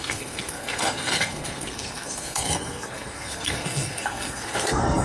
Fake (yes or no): yes